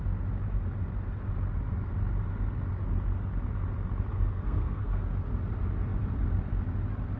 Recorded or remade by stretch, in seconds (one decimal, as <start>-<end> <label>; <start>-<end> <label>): 0.0-4.1 recorded; 4.1-5.0 remade; 5.0-7.2 recorded